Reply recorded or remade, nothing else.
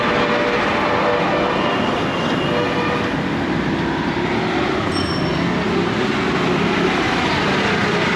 recorded